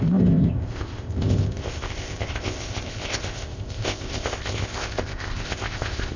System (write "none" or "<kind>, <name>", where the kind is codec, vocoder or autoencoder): codec, ZipCodec